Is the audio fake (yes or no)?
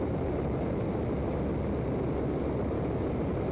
no